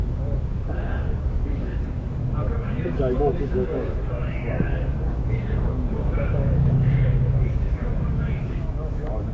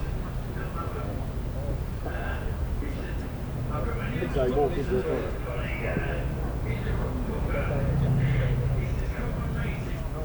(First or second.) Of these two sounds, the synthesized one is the first